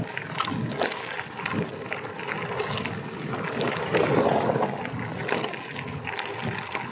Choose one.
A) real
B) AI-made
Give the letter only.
A